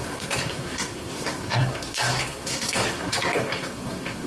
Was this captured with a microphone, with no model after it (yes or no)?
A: no